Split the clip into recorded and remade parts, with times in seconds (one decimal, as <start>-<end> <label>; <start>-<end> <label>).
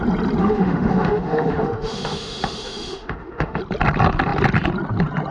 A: 0.0-0.4 recorded; 0.4-3.6 remade; 3.6-5.3 recorded